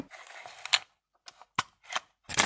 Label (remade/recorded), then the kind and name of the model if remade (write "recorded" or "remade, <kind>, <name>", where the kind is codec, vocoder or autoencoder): recorded